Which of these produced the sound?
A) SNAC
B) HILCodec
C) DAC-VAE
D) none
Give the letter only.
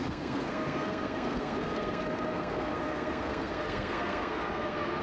A